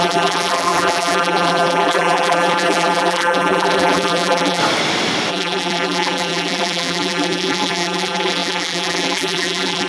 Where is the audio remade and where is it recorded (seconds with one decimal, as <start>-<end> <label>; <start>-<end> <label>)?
0.0-4.6 remade; 4.6-5.3 recorded; 5.3-9.9 remade